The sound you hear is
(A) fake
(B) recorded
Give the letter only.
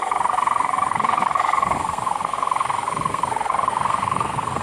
A